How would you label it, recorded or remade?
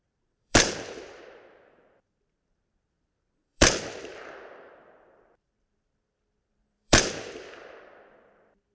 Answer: remade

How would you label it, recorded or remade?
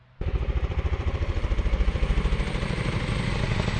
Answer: remade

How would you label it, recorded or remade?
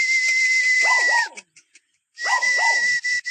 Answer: remade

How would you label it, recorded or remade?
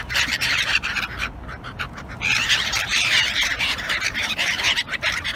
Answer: remade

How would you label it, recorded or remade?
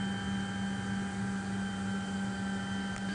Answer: recorded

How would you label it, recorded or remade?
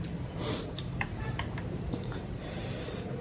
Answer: remade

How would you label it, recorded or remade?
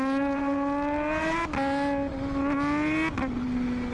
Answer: recorded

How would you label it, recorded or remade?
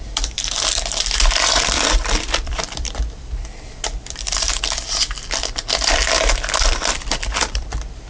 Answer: remade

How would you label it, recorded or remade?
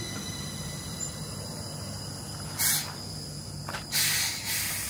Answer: recorded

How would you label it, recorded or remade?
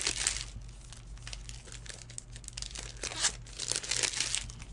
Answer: recorded